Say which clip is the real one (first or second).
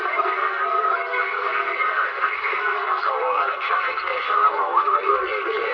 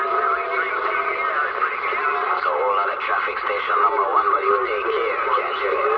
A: second